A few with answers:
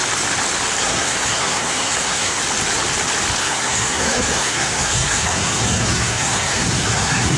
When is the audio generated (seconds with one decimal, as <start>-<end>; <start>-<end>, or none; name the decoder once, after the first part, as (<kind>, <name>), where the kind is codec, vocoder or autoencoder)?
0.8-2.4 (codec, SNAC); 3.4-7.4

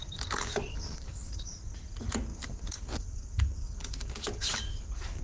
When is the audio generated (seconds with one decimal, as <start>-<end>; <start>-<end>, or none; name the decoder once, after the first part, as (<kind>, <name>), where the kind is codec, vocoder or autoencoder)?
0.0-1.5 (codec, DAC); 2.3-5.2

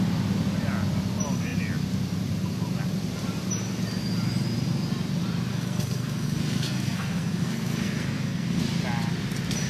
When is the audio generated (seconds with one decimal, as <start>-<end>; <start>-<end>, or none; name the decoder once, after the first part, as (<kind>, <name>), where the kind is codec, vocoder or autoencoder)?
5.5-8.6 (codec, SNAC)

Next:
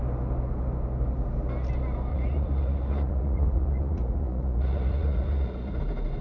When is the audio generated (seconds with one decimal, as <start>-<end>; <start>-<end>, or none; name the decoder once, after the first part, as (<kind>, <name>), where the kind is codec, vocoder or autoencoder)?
2.1-5.8 (vocoder, Vocos)

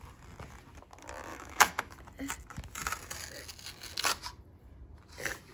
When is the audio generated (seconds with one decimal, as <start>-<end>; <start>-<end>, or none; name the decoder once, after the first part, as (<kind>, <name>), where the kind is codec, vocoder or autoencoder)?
1.3-1.9 (autoencoder, DAC-VAE)